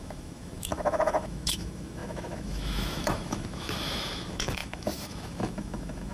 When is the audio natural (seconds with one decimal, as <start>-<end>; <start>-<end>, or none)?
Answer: none